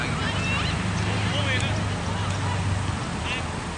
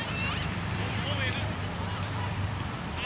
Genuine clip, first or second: first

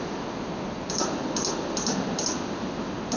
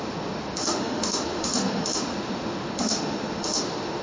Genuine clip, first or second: first